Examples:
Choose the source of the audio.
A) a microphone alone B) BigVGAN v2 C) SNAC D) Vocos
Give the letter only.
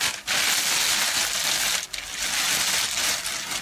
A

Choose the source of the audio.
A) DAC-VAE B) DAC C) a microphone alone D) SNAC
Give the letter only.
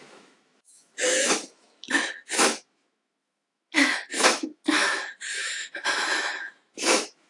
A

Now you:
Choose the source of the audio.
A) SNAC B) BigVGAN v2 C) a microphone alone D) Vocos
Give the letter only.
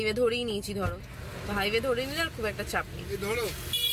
C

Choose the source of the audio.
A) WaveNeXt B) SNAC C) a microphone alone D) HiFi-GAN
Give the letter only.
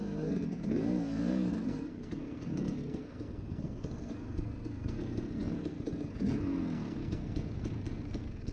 B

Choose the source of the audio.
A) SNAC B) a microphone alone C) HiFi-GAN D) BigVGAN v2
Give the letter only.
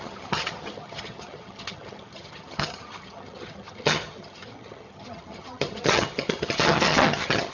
C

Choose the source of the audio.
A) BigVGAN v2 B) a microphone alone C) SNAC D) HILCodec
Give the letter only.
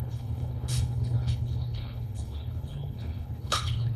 D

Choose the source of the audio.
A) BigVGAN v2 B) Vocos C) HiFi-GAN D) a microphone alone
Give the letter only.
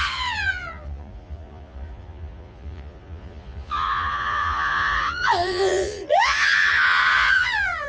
B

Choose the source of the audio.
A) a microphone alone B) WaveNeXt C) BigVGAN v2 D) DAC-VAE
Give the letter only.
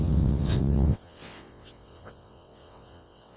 B